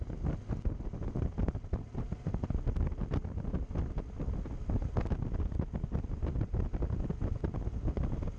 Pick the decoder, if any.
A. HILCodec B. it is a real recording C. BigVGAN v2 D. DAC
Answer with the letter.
B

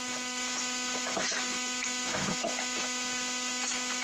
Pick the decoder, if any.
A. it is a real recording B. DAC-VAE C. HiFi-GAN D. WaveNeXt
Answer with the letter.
B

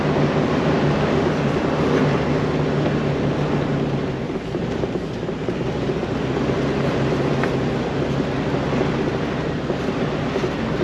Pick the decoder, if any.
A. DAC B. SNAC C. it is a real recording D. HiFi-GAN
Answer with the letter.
C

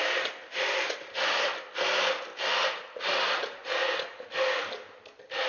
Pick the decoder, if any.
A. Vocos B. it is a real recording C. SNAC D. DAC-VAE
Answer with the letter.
B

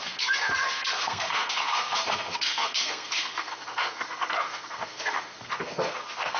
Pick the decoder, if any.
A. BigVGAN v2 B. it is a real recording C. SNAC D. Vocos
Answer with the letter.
C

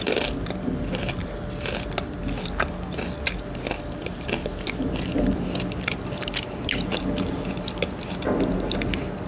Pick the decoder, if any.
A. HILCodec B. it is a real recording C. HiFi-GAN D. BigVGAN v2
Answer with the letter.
B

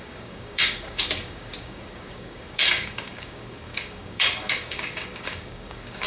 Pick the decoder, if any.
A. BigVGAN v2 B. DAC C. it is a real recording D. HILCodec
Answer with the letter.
B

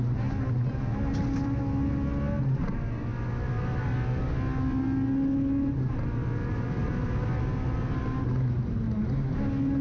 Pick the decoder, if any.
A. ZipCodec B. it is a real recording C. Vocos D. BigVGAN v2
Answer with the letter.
B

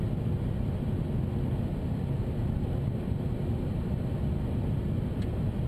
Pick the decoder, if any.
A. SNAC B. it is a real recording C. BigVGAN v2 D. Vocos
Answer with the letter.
B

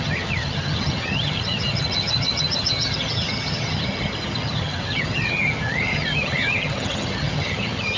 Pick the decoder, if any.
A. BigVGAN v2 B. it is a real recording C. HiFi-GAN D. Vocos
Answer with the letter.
C